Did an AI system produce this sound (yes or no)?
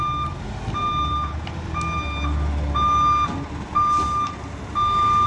no